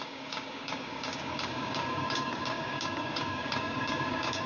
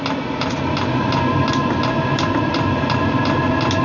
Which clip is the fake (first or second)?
first